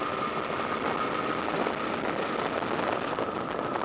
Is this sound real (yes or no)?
yes